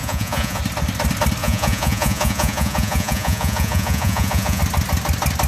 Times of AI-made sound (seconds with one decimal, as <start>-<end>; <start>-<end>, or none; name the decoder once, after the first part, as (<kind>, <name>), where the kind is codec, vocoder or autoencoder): 0.0-0.6 (vocoder, Vocos); 1.4-4.6